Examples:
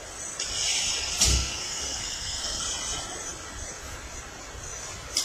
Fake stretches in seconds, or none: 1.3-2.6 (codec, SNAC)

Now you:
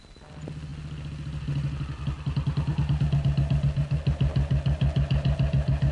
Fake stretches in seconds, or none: none

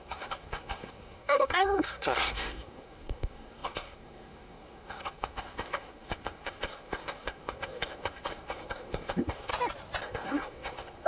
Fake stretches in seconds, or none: 0.0-9.5 (codec, SNAC); 10.0-11.1

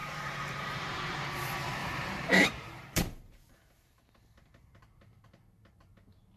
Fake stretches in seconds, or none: 0.0-1.2 (vocoder, BigVGAN v2); 1.8-4.0

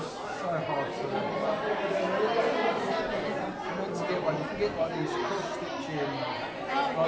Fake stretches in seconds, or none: none